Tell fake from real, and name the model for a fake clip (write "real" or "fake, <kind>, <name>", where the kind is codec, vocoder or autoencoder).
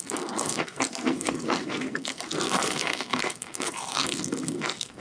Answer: fake, codec, SNAC